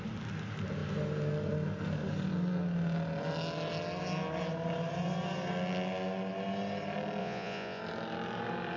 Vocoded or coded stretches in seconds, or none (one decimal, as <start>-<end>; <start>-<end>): 7.2-7.8